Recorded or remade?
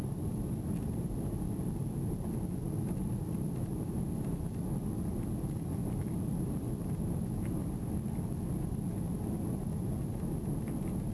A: recorded